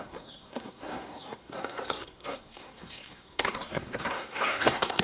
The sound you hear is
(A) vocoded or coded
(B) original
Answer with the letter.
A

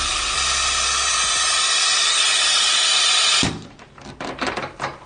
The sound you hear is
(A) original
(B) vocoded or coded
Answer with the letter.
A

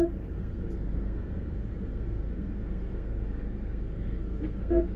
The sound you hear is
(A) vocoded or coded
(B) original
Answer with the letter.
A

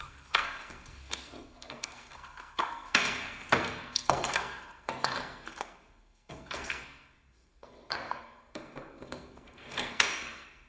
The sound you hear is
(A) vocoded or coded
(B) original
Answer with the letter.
A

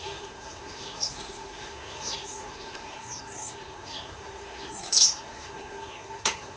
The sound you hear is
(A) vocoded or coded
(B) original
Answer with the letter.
A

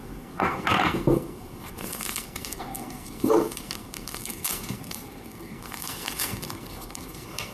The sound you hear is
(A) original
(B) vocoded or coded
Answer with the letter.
B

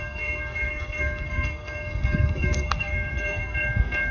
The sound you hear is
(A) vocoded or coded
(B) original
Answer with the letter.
A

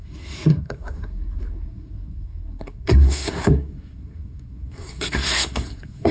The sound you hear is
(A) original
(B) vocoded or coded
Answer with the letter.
B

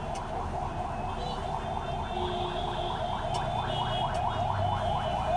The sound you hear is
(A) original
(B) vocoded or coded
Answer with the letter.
A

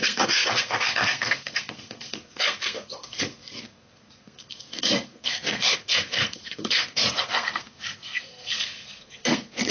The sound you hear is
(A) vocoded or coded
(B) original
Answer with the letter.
A